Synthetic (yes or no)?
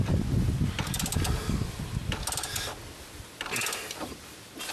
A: no